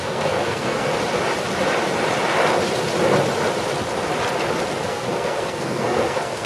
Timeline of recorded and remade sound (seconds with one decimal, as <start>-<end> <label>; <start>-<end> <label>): 0.0-0.9 remade; 0.9-4.8 recorded; 4.8-6.5 remade